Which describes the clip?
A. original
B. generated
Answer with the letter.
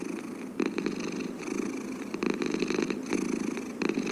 A